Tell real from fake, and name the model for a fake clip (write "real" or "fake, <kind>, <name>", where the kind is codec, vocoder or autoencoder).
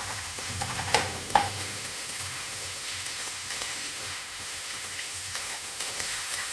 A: fake, autoencoder, DAC-VAE